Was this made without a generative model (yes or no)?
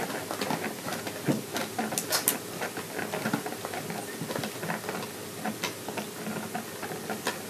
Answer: yes